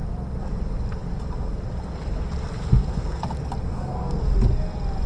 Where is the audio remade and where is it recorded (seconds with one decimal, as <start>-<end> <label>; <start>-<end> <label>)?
0.0-2.7 recorded; 2.7-3.2 remade; 3.2-3.7 recorded; 3.7-4.2 remade; 4.2-5.1 recorded